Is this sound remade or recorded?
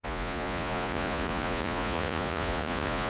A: remade